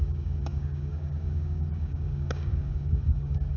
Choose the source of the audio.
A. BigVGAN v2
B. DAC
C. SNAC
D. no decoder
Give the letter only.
B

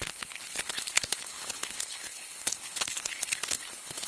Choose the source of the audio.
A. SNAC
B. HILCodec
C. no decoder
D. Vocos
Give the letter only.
B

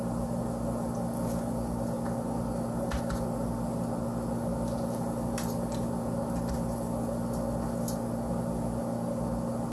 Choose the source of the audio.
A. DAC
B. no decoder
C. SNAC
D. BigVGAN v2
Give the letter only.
B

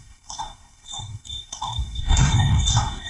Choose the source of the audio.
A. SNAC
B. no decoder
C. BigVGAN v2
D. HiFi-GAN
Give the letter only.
A